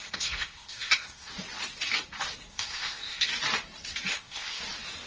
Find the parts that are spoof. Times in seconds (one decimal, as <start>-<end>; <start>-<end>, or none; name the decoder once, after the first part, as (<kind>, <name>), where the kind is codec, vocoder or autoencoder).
0.0-1.3 (codec, ZipCodec); 2.5-3.3; 4.1-4.6